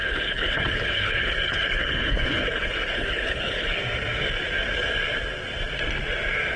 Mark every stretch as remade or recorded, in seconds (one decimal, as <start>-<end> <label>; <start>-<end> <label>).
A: 0.0-3.8 remade; 3.8-6.6 recorded